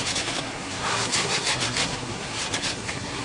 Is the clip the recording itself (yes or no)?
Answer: no